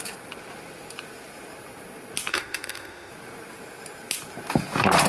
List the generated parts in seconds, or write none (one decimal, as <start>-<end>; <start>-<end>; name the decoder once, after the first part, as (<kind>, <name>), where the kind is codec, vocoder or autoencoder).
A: 2.3-3.1 (autoencoder, DAC-VAE)